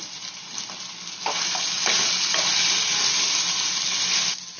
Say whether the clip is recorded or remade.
recorded